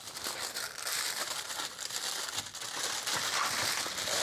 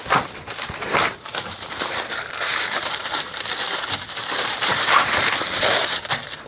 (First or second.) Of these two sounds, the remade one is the second